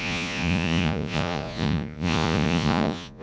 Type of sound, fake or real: fake